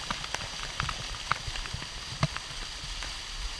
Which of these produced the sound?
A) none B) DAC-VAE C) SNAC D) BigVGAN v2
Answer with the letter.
A